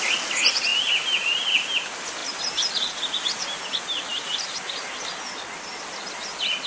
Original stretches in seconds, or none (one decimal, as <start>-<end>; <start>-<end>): 0.0-6.7